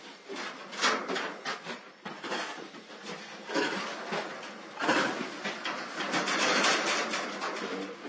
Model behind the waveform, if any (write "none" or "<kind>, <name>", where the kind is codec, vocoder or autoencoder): none